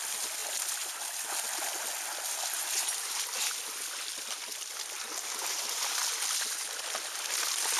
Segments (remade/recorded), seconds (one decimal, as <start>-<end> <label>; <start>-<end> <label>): 0.0-7.8 recorded